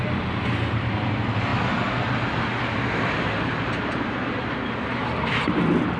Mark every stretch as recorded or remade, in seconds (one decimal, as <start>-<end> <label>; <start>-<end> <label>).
0.0-6.0 recorded